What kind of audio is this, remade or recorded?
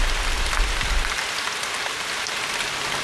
recorded